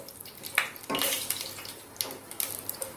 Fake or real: real